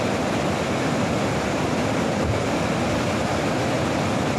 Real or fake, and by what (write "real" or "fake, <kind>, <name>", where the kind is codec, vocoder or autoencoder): real